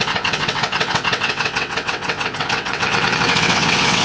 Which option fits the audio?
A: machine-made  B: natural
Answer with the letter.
A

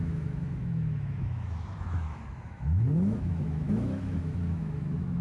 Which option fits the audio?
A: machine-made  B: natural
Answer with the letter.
A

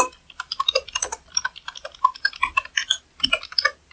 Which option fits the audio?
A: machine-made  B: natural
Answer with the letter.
B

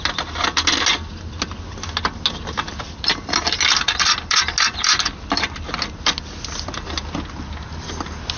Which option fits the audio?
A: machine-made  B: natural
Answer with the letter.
B